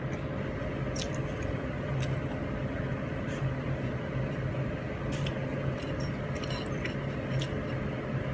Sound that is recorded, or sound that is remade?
recorded